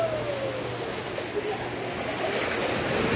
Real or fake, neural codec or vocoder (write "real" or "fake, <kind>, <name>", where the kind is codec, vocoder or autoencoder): real